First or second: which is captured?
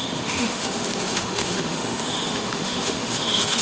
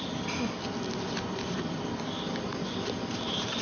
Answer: second